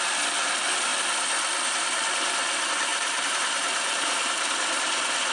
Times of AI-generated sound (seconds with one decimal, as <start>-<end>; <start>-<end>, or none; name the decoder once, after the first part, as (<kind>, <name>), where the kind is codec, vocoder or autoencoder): 2.9-4.5 (vocoder, BigVGAN v2)